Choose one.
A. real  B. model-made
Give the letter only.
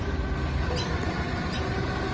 A